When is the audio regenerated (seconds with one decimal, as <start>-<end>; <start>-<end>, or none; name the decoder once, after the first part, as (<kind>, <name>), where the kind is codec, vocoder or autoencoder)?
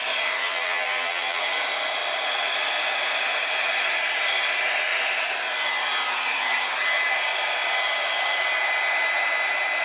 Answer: 0.4-1.4 (vocoder, BigVGAN v2)